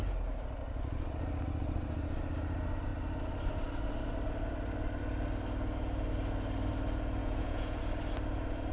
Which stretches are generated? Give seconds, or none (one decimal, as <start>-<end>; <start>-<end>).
7.2-7.8